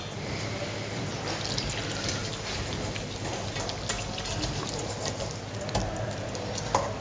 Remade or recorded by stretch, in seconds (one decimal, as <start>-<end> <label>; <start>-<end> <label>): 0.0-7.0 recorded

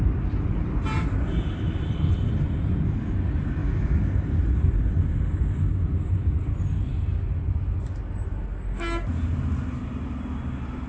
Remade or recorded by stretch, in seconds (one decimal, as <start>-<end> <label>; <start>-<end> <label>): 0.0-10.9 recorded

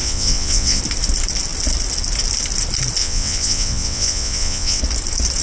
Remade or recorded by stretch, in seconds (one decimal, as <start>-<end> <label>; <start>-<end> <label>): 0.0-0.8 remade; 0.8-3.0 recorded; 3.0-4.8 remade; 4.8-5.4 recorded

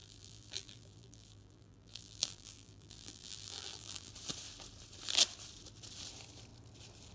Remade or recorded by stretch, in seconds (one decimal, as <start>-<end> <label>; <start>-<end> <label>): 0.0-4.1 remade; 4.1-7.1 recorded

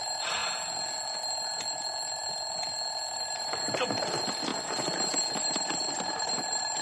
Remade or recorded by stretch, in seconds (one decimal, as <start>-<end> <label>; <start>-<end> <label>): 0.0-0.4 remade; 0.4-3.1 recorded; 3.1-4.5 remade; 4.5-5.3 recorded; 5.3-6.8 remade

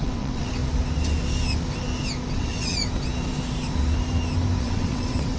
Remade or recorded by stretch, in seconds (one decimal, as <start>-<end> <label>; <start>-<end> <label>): 0.0-0.6 remade; 0.6-2.3 recorded; 2.3-2.7 remade; 2.7-4.6 recorded; 4.6-5.4 remade